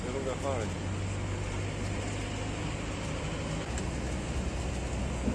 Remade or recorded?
recorded